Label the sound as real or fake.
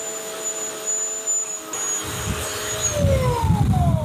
real